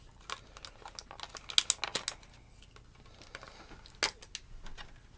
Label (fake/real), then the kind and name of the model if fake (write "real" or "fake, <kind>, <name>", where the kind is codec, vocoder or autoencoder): real